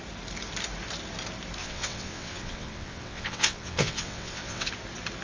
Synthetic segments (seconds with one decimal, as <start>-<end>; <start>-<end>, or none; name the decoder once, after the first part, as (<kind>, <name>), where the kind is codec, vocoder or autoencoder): 1.6-4.7 (vocoder, WaveNeXt)